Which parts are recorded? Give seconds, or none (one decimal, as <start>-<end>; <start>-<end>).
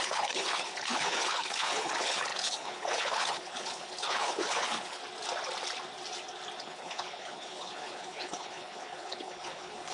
5.0-6.6